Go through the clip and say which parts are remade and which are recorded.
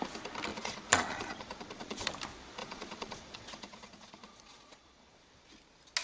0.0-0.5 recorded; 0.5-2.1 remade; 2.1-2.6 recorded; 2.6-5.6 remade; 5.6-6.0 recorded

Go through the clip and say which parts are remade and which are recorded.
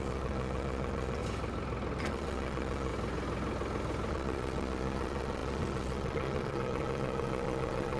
0.0-1.2 remade; 1.2-2.0 recorded; 2.0-2.9 remade; 2.9-4.1 recorded; 4.1-8.0 remade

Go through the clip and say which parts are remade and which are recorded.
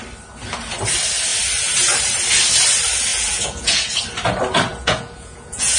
0.0-3.1 recorded; 3.1-4.0 remade; 4.0-4.7 recorded; 4.7-5.8 remade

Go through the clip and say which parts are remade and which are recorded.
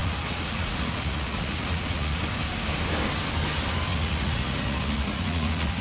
0.0-2.2 remade; 2.2-3.9 recorded; 3.9-5.8 remade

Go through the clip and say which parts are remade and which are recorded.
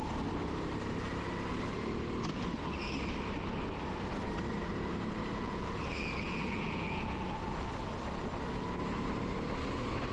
0.0-5.3 recorded; 5.3-7.7 remade; 7.7-10.1 recorded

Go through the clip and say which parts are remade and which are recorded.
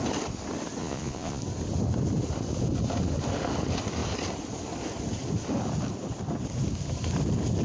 0.0-0.8 recorded; 0.8-1.4 remade; 1.4-7.6 recorded